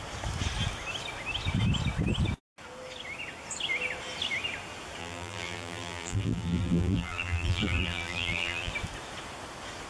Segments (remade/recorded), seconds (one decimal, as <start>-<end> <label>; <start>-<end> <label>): 0.0-5.0 recorded; 5.0-8.7 remade; 8.7-9.9 recorded